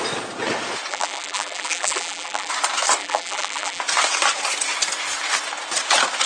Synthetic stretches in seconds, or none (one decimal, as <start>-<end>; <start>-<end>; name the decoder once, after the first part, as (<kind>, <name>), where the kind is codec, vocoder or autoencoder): 0.9-2.5 (vocoder, BigVGAN v2); 3.0-3.8